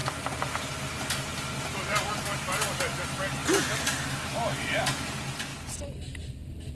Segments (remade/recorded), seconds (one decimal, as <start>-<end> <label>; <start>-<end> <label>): 0.0-6.7 recorded